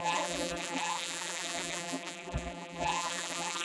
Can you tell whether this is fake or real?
fake